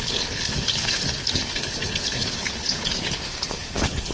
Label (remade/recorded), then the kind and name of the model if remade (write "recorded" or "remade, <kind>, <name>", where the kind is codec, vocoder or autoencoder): remade, codec, HILCodec